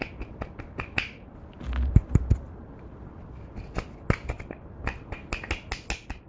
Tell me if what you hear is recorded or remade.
recorded